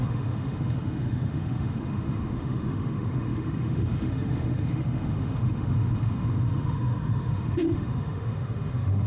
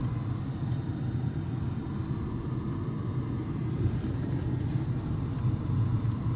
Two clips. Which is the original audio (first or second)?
second